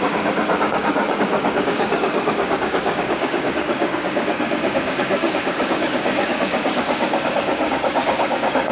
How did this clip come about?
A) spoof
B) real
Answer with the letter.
A